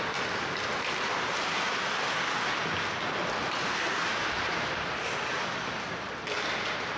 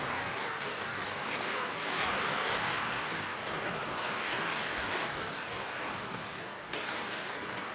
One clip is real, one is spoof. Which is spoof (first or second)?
second